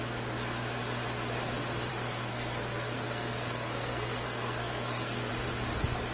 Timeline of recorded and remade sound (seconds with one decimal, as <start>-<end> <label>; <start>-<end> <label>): 0.0-1.9 recorded; 1.9-5.3 remade; 5.3-6.1 recorded

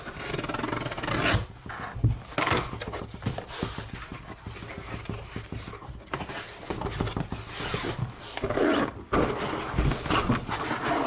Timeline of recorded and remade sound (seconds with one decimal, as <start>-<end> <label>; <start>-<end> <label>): 0.0-11.1 recorded